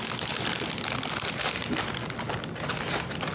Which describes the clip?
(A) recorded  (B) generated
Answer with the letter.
A